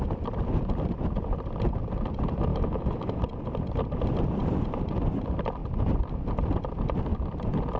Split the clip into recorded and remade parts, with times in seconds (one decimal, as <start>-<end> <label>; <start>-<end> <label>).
0.0-2.5 recorded; 2.5-3.2 remade; 3.2-7.8 recorded